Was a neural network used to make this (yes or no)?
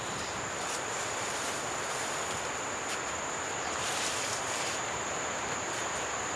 yes